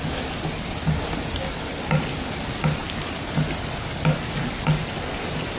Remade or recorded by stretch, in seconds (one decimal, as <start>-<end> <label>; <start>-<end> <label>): 0.0-5.6 recorded

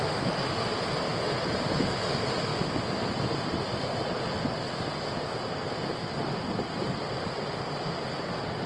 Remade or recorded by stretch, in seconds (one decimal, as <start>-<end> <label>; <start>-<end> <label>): 0.0-8.7 recorded

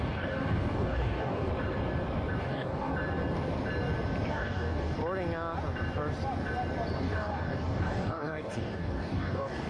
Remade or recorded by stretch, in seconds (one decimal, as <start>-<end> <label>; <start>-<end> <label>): 0.0-1.5 remade; 1.5-2.4 recorded; 2.4-2.9 remade; 2.9-4.3 recorded; 4.3-5.0 remade; 5.0-7.0 recorded; 7.0-9.7 remade

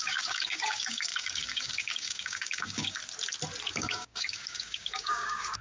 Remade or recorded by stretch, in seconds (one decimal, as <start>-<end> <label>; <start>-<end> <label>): 0.0-3.0 remade; 3.0-3.7 recorded; 3.7-5.6 remade

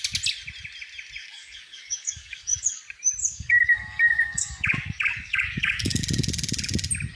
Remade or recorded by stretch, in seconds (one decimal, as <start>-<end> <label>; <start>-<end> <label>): 0.0-1.2 recorded; 1.2-2.8 remade; 2.8-3.2 recorded; 3.2-6.0 remade; 6.0-7.1 recorded